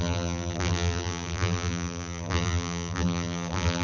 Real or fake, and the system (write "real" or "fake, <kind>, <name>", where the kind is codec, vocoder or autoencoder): fake, vocoder, BigVGAN v2